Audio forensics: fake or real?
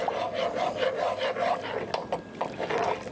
real